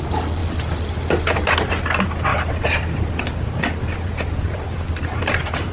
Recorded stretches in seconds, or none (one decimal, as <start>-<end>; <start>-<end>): 0.0-0.4; 0.9-2.3